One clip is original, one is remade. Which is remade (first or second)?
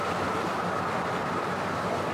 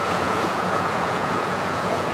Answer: second